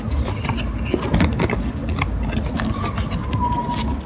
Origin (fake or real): real